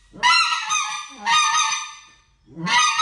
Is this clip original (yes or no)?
yes